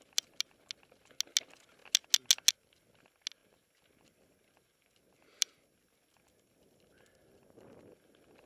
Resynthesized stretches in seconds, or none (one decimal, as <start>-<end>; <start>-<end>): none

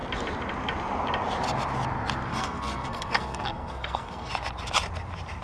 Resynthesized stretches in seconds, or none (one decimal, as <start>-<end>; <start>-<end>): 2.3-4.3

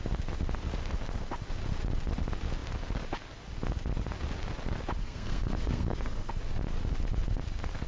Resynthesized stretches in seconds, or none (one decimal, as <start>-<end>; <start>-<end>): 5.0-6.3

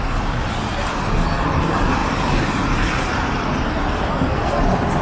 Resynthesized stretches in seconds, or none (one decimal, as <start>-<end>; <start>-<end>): 4.1-4.6

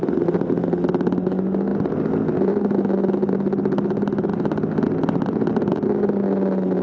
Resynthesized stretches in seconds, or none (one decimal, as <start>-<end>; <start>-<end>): none

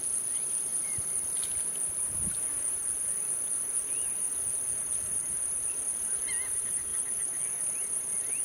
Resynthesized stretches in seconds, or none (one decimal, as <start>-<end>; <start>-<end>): none